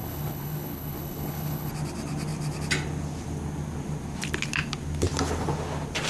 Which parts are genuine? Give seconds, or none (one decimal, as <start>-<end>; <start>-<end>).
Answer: 1.7-6.1

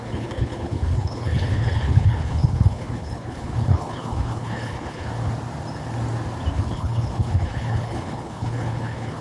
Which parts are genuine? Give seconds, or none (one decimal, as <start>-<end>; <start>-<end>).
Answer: 5.1-6.5

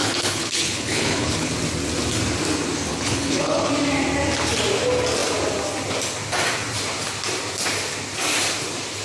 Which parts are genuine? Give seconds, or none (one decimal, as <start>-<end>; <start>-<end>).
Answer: 1.5-2.9; 3.7-9.0

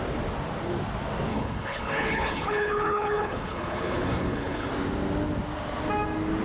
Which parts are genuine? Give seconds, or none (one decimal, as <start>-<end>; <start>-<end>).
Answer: 0.0-1.3; 4.7-6.4

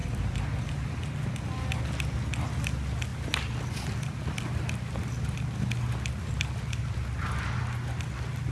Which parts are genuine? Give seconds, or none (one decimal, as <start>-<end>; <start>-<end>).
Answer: 0.0-8.5

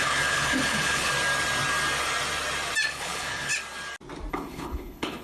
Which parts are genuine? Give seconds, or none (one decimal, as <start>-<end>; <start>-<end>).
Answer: 1.1-2.9; 3.5-4.3

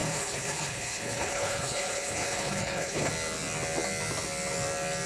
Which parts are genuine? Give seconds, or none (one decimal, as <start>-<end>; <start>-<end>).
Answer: 3.1-5.1